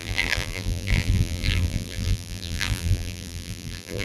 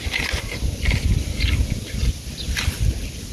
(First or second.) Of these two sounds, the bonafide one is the second